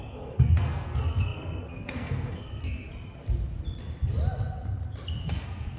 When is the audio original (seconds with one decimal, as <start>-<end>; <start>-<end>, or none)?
2.9-5.2